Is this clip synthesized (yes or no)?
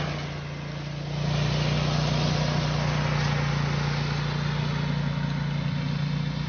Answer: no